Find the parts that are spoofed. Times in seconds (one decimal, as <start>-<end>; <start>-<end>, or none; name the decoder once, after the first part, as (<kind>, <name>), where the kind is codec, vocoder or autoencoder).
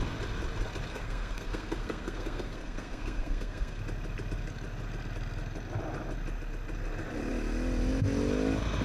0.9-3.8 (codec, SNAC)